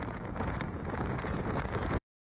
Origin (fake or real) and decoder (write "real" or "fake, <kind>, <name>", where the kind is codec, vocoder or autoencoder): fake, vocoder, Vocos